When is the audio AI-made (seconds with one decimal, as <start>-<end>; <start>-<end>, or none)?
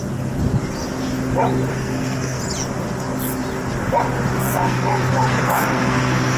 1.7-2.4; 4.4-6.4